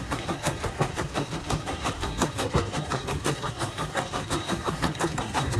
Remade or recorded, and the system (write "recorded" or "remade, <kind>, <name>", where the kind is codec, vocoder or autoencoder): remade, codec, SNAC